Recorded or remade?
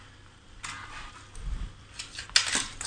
recorded